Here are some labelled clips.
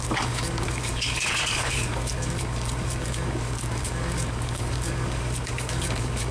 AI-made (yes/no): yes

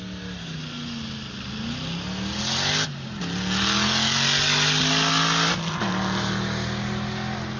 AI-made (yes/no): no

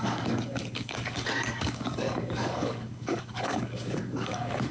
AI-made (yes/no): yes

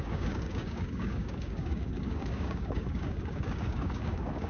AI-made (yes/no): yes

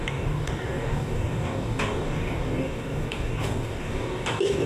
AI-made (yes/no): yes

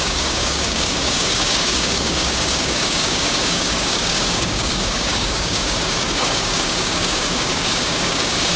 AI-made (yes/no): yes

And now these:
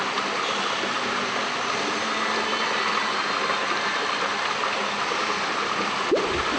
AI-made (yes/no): no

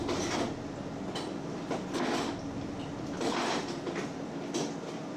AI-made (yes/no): no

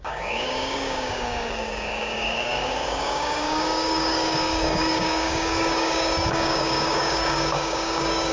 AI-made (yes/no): yes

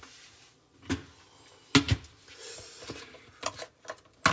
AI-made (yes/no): no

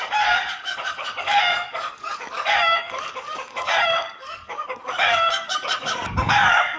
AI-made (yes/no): yes